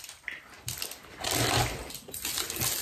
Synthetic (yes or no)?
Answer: no